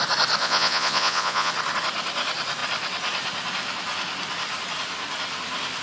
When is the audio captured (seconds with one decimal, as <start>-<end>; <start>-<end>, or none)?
0.0-0.4; 1.5-5.8